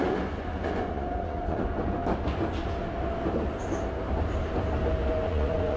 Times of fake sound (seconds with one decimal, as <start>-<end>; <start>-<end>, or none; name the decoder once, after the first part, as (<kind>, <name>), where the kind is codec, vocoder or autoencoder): 0.0-2.0 (vocoder, Vocos); 5.1-5.8